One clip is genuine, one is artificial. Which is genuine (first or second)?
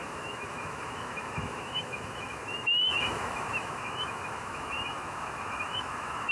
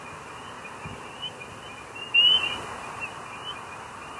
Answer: second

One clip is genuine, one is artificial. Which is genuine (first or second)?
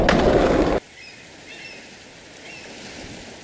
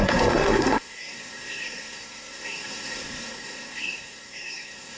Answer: first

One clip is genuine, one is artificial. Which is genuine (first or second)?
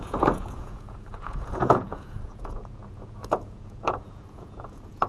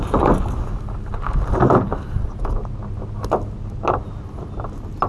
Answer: second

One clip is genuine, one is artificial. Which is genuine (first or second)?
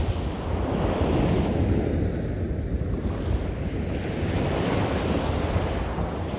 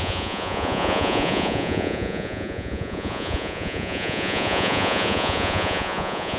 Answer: first